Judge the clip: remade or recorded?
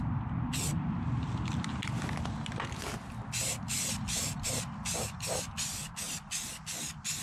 recorded